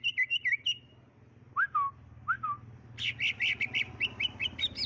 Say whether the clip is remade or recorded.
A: recorded